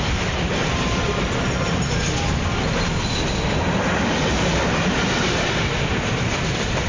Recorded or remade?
recorded